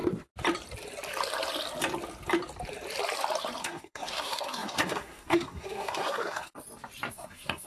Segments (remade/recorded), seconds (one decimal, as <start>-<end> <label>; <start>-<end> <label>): 0.0-3.6 recorded; 3.6-6.5 remade; 6.5-7.1 recorded; 7.1-7.7 remade